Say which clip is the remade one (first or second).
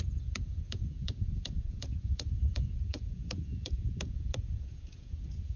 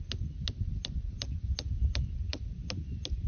first